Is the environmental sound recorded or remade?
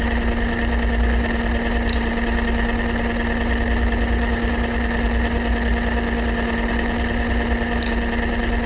recorded